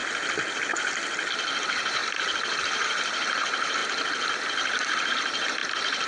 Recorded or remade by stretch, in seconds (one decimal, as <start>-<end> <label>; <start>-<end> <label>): 0.0-1.6 recorded; 1.6-2.0 remade; 2.0-2.6 recorded; 2.6-3.8 remade; 3.8-5.1 recorded; 5.1-6.1 remade